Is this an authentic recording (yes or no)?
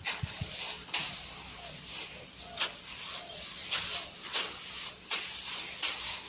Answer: yes